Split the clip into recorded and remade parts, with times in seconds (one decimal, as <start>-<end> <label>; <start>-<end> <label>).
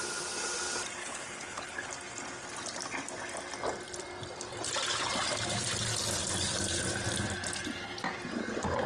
0.0-1.0 recorded; 1.0-1.9 remade; 1.9-8.9 recorded